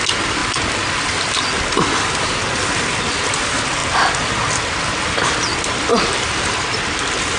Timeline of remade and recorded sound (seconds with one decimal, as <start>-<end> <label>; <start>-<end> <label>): 0.0-7.4 recorded